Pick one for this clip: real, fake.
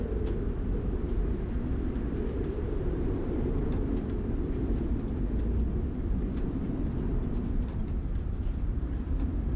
fake